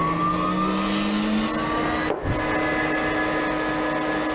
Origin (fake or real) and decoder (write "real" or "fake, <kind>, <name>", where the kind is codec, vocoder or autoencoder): real